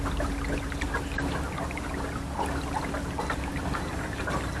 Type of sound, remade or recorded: recorded